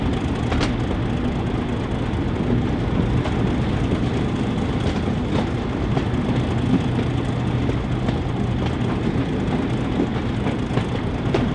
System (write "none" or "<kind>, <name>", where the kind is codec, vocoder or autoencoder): none